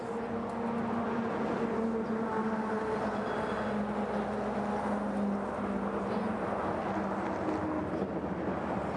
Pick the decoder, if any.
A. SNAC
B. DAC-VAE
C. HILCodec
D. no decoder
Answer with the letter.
D